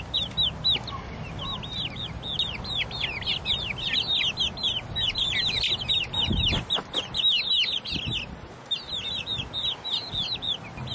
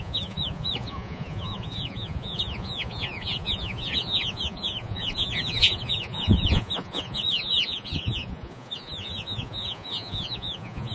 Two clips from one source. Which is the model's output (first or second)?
second